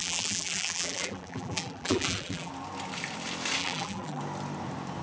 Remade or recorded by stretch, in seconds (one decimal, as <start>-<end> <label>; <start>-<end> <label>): 0.0-2.5 remade; 2.5-3.6 recorded; 3.6-4.2 remade; 4.2-5.0 recorded